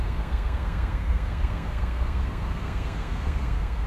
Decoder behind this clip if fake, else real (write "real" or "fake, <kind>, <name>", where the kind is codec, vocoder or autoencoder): fake, codec, SNAC